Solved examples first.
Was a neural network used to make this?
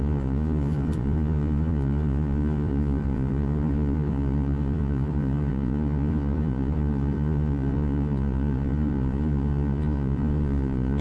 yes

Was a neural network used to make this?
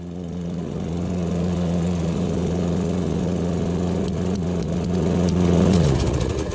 yes